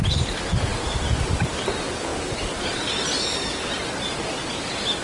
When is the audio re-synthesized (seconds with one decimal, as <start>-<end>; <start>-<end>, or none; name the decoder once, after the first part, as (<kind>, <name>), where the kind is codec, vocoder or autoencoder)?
none